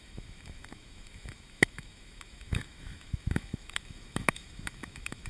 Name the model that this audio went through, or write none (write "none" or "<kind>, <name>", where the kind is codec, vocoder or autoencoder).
autoencoder, DAC-VAE